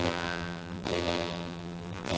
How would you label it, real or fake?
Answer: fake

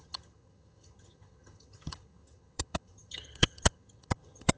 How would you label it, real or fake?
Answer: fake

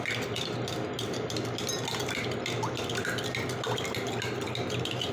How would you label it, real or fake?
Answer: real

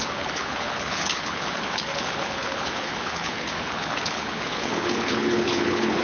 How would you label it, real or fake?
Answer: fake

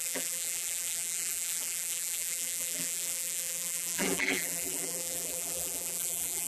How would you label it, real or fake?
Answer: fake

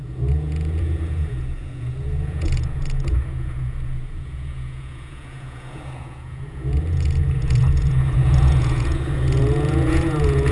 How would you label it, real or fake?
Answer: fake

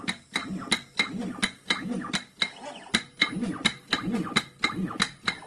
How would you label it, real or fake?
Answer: real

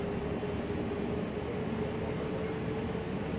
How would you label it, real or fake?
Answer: real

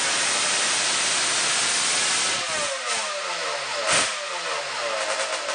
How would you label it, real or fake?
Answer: real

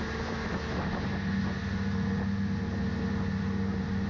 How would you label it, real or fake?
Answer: real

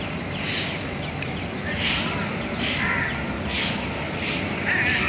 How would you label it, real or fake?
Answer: real